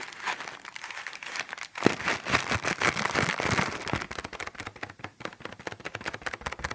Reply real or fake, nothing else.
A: real